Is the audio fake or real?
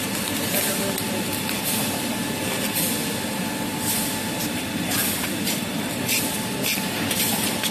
real